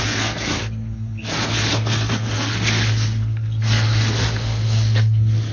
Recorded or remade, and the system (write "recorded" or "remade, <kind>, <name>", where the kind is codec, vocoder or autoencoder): remade, codec, SNAC